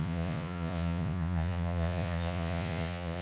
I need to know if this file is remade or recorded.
remade